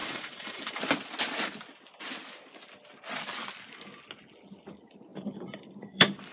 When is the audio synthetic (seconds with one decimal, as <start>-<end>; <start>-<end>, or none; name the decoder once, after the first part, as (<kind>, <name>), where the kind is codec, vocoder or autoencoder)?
0.0-0.9 (vocoder, BigVGAN v2); 5.1-6.3